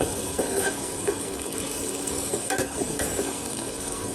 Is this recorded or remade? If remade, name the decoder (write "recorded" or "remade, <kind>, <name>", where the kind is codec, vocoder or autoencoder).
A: remade, codec, SNAC